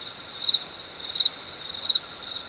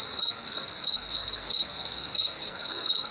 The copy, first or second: second